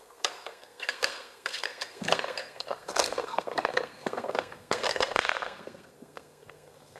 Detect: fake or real fake